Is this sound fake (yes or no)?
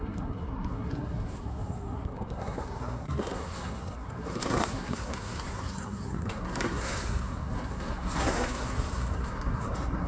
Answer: yes